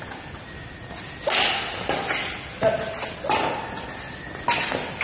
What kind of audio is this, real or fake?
real